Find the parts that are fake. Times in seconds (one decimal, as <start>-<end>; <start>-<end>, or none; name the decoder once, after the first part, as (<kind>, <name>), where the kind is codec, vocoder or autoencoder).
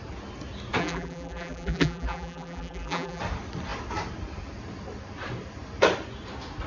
0.8-3.2 (vocoder, BigVGAN v2)